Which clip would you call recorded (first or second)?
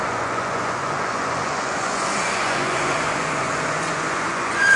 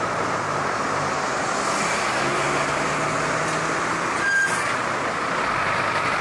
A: second